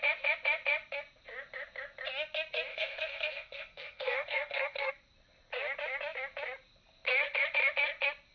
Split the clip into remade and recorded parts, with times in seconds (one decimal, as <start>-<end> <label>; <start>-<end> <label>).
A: 0.0-2.7 recorded; 2.7-4.9 remade; 4.9-8.3 recorded